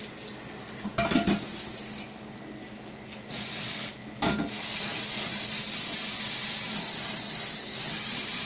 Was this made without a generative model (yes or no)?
yes